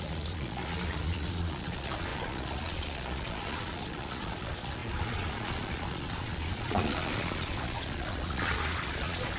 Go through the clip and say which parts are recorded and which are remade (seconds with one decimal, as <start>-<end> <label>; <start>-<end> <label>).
0.0-9.4 remade